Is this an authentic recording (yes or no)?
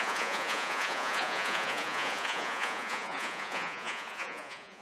no